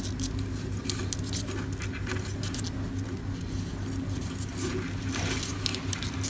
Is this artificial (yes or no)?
no